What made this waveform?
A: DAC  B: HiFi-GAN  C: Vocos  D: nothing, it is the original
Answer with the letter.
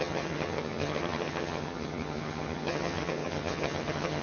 B